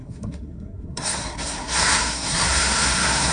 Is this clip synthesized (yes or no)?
yes